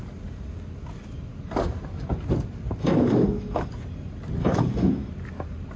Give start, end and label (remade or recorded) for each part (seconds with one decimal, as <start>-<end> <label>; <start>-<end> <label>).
0.0-2.8 recorded; 2.8-3.7 remade; 3.7-4.4 recorded; 4.4-5.1 remade; 5.1-5.8 recorded